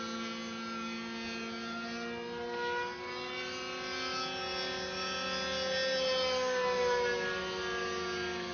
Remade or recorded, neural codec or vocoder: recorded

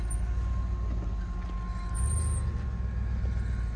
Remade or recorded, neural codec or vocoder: recorded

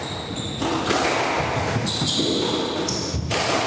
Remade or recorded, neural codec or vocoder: recorded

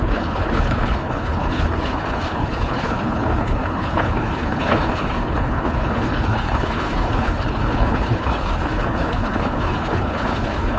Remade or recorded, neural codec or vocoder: remade, codec, HILCodec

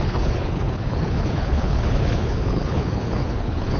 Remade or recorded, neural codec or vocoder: remade, codec, HILCodec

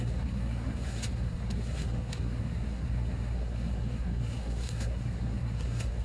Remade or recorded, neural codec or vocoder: remade, codec, SNAC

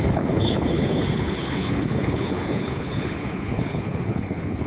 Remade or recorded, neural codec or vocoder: remade, codec, HILCodec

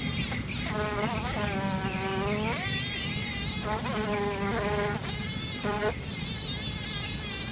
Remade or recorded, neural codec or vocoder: recorded